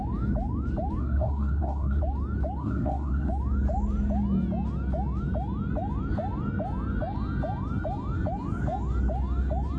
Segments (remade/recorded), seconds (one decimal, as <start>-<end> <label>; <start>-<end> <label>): 0.0-1.0 recorded; 1.0-2.0 remade; 2.0-2.6 recorded; 2.6-3.3 remade; 3.3-9.8 recorded